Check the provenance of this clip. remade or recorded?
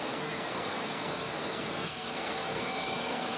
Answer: remade